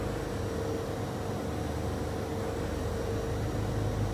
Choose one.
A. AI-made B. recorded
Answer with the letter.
B